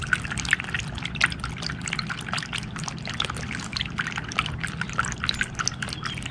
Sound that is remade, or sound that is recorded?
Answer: recorded